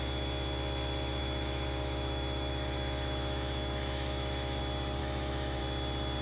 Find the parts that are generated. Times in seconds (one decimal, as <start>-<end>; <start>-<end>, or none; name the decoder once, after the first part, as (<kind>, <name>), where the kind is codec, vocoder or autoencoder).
1.2-4.6 (autoencoder, DAC-VAE); 5.0-5.6